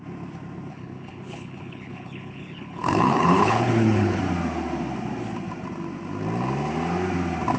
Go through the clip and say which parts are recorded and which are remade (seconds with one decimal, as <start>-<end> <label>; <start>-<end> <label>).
0.0-0.7 recorded; 0.7-4.2 remade; 4.2-7.6 recorded